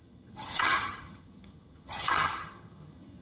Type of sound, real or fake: fake